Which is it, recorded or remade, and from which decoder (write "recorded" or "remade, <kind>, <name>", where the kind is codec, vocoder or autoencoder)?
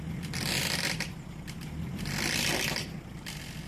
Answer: recorded